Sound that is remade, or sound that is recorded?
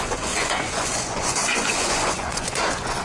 remade